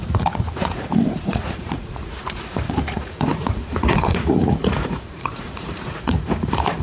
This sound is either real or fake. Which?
fake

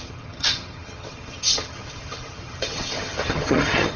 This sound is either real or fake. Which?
fake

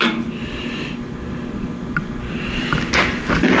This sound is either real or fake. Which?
real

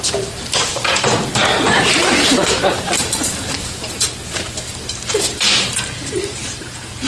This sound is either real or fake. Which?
fake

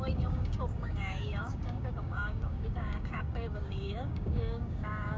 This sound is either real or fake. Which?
fake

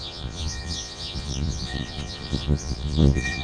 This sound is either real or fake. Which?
fake